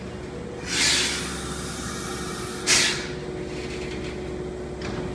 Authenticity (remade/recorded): recorded